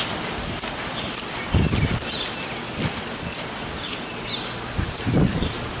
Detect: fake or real real